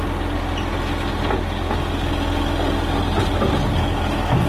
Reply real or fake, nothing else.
real